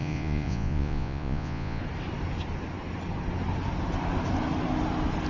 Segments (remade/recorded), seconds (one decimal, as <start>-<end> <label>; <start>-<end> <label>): 0.0-1.8 remade; 1.8-5.3 recorded